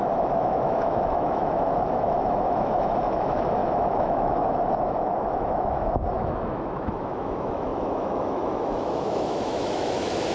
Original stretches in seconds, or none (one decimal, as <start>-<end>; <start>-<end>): none